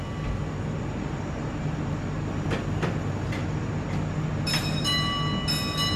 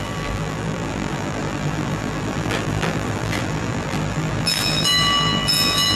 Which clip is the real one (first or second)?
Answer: first